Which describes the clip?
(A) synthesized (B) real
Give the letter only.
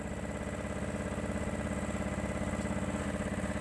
B